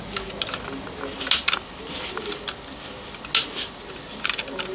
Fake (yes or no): no